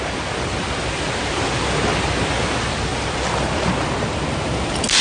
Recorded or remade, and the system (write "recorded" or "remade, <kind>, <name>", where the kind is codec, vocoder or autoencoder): recorded